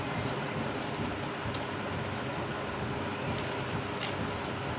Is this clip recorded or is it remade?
recorded